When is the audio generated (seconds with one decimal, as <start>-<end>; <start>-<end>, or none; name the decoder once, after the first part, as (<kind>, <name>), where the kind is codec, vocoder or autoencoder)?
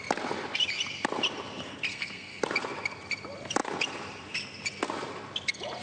1.9-2.4 (codec, SNAC)